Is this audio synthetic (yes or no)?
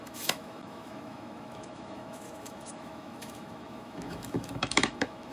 yes